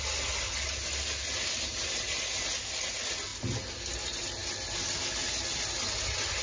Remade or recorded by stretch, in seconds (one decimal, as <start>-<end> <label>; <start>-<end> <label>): 0.0-6.4 recorded